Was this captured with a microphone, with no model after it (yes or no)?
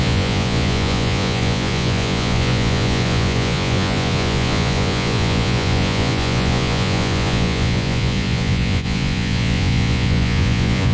no